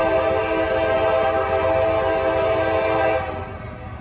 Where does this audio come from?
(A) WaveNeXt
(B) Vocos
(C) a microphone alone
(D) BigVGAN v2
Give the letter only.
C